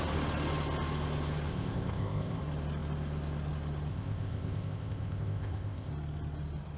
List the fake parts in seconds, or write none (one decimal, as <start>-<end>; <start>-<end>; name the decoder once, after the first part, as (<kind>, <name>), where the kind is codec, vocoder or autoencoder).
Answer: 1.5-2.4 (codec, ZipCodec); 3.9-5.9